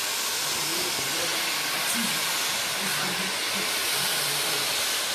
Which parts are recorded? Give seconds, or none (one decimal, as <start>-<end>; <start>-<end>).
0.0-5.1